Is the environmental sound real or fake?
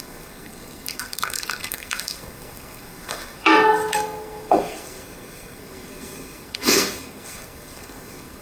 fake